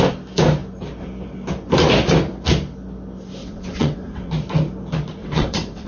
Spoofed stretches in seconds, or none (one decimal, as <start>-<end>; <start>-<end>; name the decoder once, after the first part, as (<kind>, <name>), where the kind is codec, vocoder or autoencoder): 3.4-4.3 (vocoder, WaveNeXt); 5.2-5.9